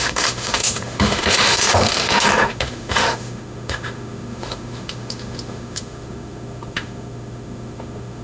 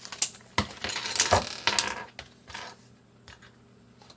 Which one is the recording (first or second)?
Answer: second